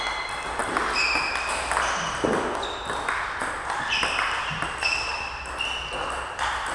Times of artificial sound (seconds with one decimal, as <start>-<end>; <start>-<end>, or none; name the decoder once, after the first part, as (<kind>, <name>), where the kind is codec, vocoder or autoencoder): none